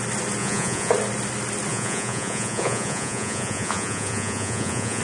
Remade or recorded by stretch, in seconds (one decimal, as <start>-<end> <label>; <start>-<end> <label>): 0.0-0.4 recorded; 0.4-0.9 remade; 0.9-1.7 recorded; 1.7-5.0 remade